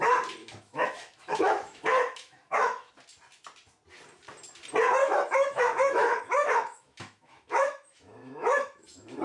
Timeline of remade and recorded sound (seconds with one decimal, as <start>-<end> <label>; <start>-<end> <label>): 0.0-0.4 recorded; 0.4-2.9 remade; 2.9-5.0 recorded; 5.0-9.2 remade

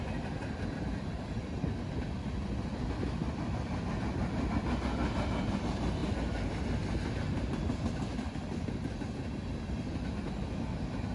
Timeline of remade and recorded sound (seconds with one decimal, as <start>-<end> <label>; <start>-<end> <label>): 0.0-11.1 recorded

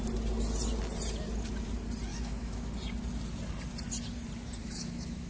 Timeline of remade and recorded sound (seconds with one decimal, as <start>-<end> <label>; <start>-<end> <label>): 0.0-2.1 recorded; 2.1-2.7 remade; 2.7-4.6 recorded; 4.6-5.3 remade